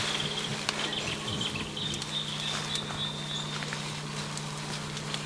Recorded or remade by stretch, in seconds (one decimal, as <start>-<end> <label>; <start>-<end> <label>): 0.0-5.3 recorded